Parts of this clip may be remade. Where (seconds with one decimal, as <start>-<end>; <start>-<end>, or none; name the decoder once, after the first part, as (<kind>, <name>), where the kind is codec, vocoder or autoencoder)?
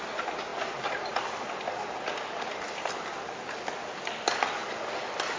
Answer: none